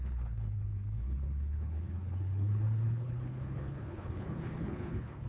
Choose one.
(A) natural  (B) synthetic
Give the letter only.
B